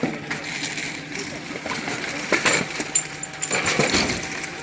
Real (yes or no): yes